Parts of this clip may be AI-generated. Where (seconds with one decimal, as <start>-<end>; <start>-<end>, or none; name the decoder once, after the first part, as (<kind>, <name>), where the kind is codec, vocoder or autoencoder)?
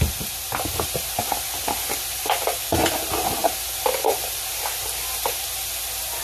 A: none